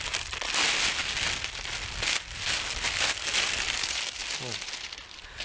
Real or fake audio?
real